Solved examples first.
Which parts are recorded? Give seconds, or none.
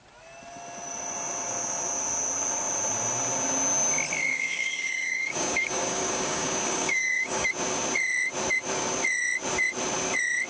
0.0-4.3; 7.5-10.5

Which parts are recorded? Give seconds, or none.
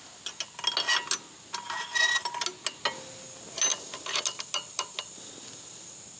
0.0-6.2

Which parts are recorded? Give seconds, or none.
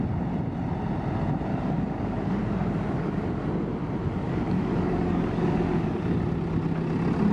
0.0-1.5; 3.4-4.2; 6.0-7.3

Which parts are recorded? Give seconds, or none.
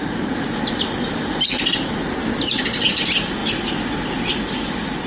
0.0-5.1